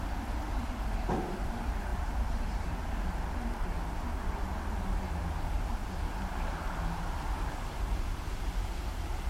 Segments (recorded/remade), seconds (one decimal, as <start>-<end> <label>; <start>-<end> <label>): 0.0-2.8 remade; 2.8-7.7 recorded; 7.7-9.3 remade